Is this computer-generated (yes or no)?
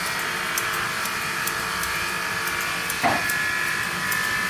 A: no